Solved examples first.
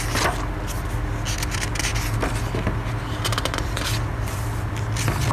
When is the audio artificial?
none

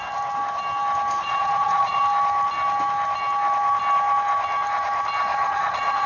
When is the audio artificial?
1.2-2.0 (vocoder, Vocos); 5.3-6.1

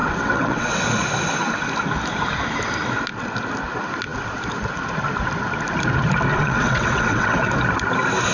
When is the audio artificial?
0.0-0.9 (vocoder, WaveNeXt); 6.3-7.5

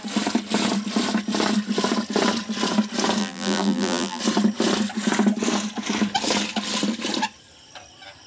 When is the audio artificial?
3.2-4.2 (vocoder, BigVGAN v2)

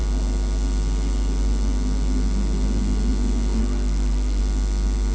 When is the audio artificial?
3.6-4.4 (codec, SNAC)

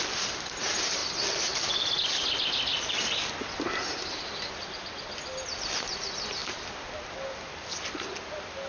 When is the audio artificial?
none

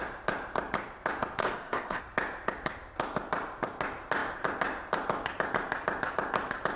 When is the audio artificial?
1.4-2.0 (codec, ZipCodec)

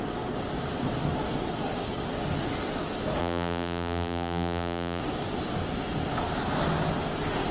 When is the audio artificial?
3.2-5.0 (vocoder, BigVGAN v2)